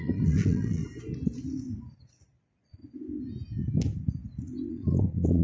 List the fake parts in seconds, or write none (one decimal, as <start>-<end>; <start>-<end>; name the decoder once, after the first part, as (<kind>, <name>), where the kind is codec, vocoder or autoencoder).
0.0-0.8 (vocoder, Vocos); 2.1-2.8; 4.7-5.4

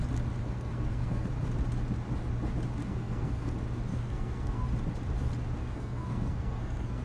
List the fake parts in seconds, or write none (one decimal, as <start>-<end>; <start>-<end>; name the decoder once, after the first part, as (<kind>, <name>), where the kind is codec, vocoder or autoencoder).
0.4-1.3 (codec, SNAC); 2.8-3.5; 3.9-4.6; 5.6-7.0

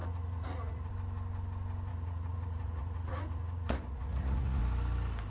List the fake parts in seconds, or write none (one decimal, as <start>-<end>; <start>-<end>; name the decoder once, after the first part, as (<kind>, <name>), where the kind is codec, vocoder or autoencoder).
0.0-0.9 (vocoder, Vocos); 1.9-4.6